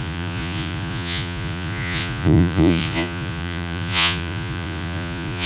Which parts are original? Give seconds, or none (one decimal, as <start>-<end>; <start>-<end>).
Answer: none

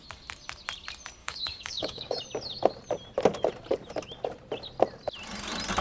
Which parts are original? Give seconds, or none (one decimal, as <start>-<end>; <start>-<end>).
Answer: 0.0-1.2; 2.2-5.8

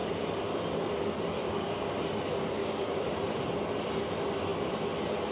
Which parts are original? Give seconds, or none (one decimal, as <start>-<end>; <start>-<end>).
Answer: 0.0-1.4; 1.9-2.6; 3.1-5.3